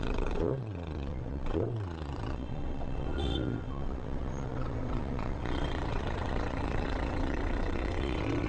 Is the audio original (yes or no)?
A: no